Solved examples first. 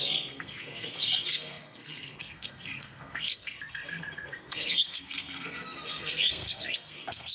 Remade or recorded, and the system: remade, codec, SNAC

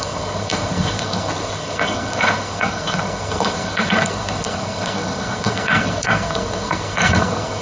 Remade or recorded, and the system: remade, codec, SNAC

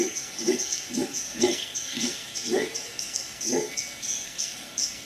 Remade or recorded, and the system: remade, codec, SNAC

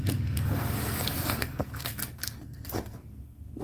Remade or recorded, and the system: remade, codec, SNAC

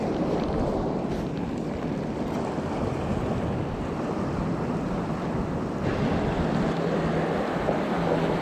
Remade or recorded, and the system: recorded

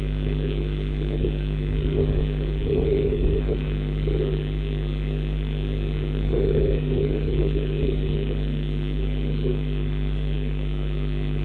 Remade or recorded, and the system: remade, codec, SNAC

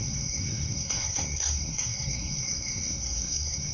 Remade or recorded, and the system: remade, codec, SNAC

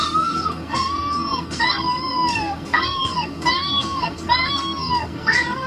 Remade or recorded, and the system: remade, codec, SNAC